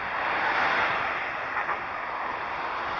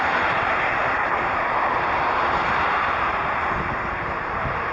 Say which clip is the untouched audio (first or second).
first